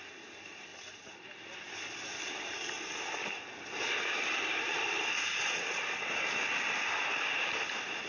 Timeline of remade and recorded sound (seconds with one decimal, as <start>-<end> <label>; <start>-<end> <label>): 0.0-0.7 recorded; 0.7-5.3 remade; 5.3-8.1 recorded